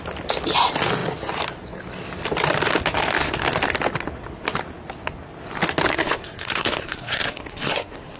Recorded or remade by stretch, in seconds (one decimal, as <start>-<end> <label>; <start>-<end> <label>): 0.0-5.9 recorded; 5.9-8.2 remade